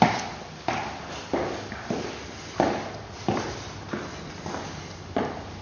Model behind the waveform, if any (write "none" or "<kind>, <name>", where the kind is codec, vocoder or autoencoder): none